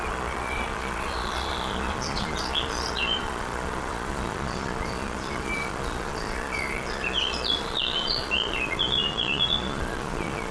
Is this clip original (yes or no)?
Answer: no